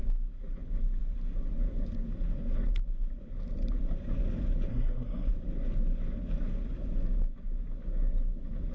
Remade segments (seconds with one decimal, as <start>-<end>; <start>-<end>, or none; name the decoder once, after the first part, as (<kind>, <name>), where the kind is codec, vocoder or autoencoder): 4.7-5.3 (codec, SNAC)